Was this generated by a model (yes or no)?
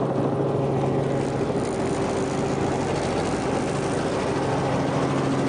no